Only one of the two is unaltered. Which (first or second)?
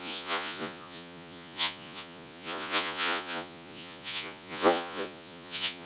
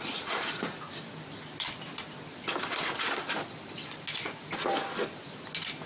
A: second